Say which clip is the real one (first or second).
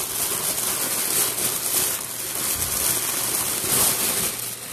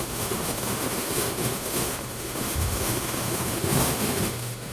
first